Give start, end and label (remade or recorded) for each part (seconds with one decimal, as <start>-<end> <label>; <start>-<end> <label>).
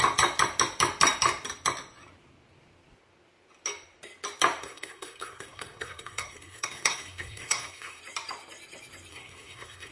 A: 0.0-4.6 recorded; 4.6-8.0 remade; 8.0-9.1 recorded; 9.1-9.9 remade